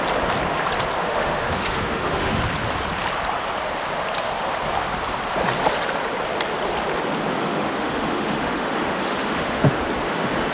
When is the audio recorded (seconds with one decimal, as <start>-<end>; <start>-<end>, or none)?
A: 0.0-1.0; 2.4-7.4; 9.7-10.5